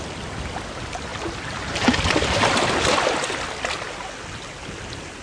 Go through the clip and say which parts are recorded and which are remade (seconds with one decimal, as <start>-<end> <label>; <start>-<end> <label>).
0.0-5.2 recorded